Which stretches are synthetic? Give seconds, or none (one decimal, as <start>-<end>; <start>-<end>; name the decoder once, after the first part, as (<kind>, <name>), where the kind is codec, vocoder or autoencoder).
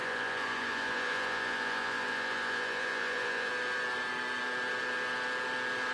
0.0-3.5 (vocoder, Vocos)